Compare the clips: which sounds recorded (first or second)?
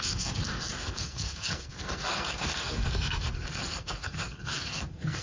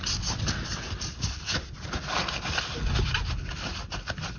second